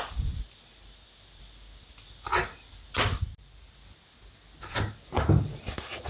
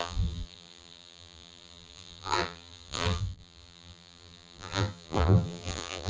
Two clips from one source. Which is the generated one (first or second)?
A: second